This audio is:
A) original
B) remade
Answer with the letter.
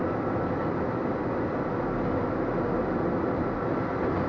A